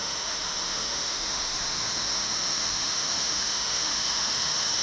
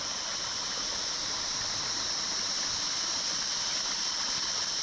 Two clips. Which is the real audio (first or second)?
second